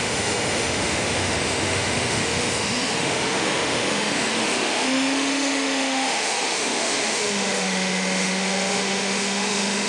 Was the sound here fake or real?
fake